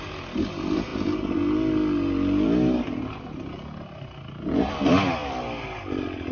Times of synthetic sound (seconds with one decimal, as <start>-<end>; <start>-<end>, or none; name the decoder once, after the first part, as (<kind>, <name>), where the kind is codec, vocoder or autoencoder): none